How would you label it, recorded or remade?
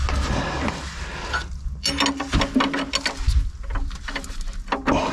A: recorded